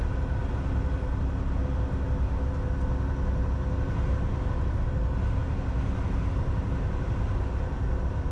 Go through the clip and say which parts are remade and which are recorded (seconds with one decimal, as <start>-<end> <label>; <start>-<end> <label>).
0.0-8.3 recorded